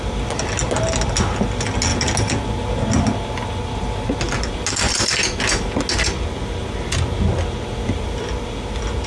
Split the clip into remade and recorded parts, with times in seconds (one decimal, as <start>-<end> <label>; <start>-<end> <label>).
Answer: 0.0-9.1 recorded

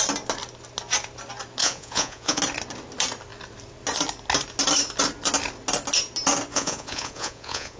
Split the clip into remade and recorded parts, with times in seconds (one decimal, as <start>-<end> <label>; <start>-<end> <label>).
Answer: 0.0-1.6 recorded; 1.6-2.4 remade; 2.4-6.5 recorded; 6.5-7.8 remade

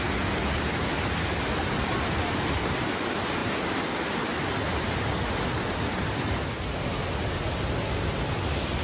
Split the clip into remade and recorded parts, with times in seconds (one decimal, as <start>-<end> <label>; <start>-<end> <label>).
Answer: 0.0-8.8 recorded

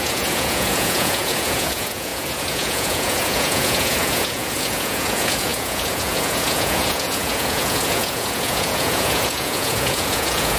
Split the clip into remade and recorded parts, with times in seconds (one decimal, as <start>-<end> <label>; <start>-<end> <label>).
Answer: 0.0-10.6 remade

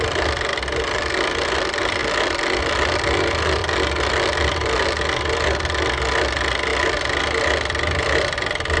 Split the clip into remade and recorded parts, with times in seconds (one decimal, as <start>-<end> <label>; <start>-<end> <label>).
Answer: 0.0-8.8 recorded

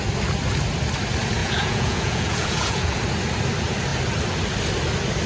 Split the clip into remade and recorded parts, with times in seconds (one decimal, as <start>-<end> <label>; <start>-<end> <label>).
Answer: 0.0-1.4 recorded; 1.4-3.0 remade; 3.0-5.3 recorded

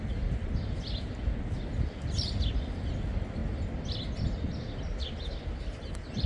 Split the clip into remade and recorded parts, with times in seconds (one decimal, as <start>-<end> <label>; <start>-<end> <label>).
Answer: 0.0-6.3 recorded

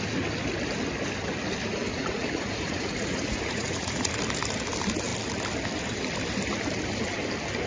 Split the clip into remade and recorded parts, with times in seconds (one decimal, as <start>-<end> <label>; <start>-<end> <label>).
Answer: 0.0-1.9 recorded; 1.9-4.1 remade; 4.1-7.7 recorded